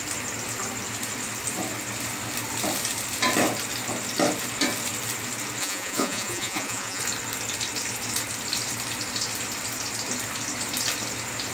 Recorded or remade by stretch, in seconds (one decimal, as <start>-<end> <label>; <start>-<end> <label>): 0.0-5.6 recorded; 5.6-7.0 remade; 7.0-11.5 recorded